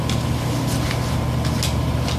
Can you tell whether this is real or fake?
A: real